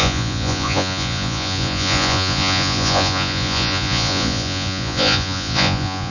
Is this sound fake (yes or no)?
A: yes